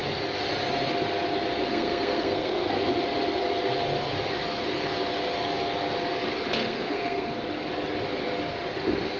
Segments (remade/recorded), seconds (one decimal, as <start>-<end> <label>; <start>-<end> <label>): 0.0-1.7 recorded; 1.7-2.8 remade; 2.8-6.6 recorded; 6.6-7.4 remade; 7.4-9.2 recorded